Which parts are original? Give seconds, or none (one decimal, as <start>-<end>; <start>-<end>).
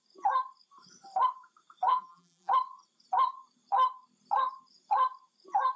0.0-1.9; 2.5-5.8